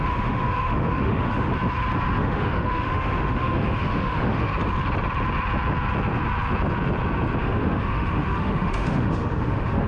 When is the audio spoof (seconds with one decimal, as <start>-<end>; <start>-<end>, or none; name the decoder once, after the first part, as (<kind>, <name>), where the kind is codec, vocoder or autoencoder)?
0.0-1.5 (autoencoder, DAC-VAE); 2.2-4.5; 7.4-9.9